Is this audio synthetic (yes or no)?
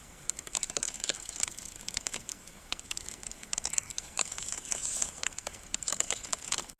yes